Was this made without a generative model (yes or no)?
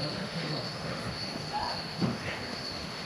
no